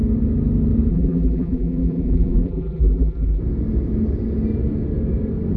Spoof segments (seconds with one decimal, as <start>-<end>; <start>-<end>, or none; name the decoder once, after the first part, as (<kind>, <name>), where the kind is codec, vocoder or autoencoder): 0.9-3.4 (vocoder, BigVGAN v2)